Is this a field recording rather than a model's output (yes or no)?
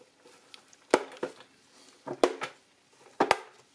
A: yes